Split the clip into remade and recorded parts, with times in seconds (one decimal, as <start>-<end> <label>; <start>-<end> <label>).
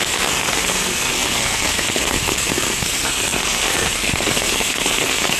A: 0.0-5.4 remade